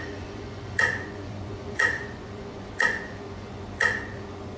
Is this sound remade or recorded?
remade